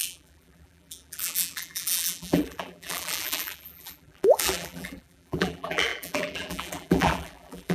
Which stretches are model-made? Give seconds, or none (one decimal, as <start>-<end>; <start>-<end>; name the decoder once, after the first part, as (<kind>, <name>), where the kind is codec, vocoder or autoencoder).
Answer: 0.0-7.7 (vocoder, BigVGAN v2)